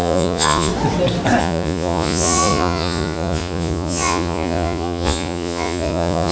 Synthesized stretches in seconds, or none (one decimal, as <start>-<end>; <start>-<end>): 0.0-0.7; 1.4-6.3

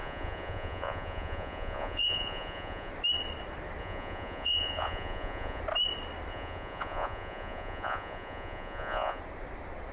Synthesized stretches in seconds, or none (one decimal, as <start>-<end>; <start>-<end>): 0.0-2.9; 3.8-5.6; 6.3-9.2

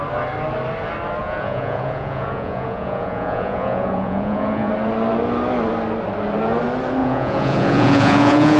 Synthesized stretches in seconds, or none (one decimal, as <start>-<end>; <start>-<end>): 1.2-4.7; 7.0-8.6

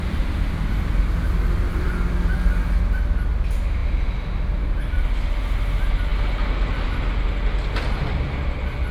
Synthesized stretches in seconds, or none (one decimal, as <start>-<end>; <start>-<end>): none